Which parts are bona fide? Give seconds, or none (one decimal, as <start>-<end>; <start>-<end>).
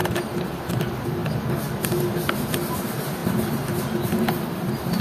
0.0-0.7